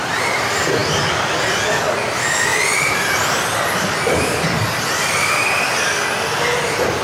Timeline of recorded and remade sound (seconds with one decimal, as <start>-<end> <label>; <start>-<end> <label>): 0.0-7.0 recorded